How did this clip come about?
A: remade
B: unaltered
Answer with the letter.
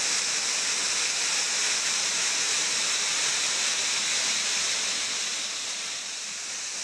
B